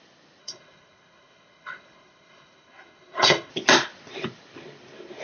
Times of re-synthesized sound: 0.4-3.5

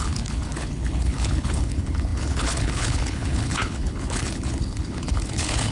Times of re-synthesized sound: 0.0-5.7

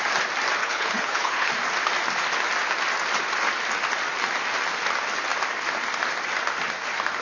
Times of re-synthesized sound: 0.6-1.5

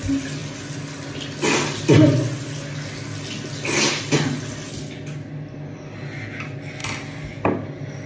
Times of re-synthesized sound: none

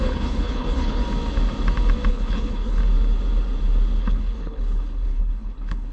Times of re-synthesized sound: 0.0-1.0; 2.1-2.8; 4.0-5.9

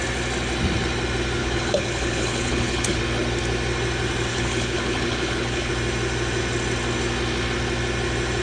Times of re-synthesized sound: 1.4-3.0; 4.3-5.7